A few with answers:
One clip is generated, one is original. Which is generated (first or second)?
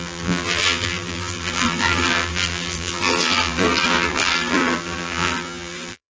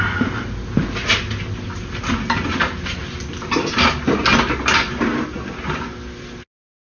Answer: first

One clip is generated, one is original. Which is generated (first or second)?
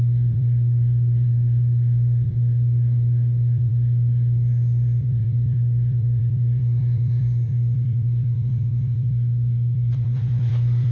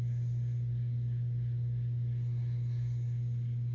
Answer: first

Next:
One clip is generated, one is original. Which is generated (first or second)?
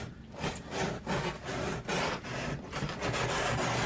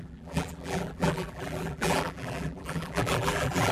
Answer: second